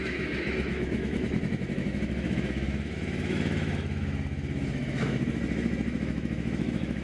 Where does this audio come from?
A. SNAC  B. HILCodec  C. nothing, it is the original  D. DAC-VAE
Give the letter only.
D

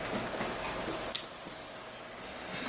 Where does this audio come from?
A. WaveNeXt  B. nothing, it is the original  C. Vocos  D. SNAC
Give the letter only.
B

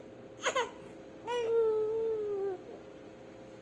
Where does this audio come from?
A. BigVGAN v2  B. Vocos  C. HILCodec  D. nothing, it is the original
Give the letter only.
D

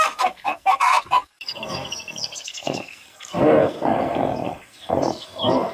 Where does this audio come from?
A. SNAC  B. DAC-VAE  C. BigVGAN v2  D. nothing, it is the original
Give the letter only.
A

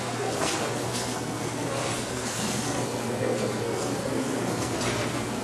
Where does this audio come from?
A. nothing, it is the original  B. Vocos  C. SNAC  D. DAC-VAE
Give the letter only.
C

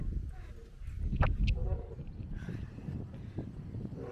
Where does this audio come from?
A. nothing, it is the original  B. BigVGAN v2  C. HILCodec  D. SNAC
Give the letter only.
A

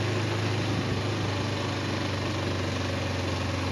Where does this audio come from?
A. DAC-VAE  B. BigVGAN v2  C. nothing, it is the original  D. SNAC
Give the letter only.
C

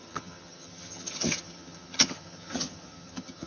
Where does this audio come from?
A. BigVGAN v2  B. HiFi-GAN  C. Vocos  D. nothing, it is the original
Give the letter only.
B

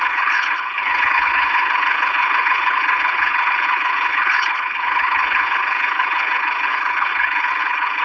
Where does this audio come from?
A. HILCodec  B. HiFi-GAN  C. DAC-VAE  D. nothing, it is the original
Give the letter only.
A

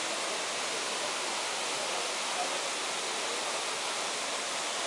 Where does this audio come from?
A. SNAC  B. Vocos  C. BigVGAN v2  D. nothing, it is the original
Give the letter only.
D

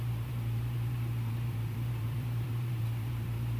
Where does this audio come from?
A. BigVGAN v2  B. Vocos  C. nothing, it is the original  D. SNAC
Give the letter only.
A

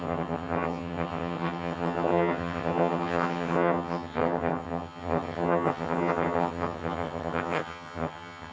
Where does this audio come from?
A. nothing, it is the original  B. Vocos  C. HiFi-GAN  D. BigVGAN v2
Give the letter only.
C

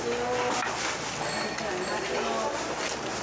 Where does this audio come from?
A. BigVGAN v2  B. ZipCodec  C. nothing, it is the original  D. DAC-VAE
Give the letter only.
C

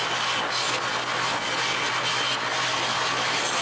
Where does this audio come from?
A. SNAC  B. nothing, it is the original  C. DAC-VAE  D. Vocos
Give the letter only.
B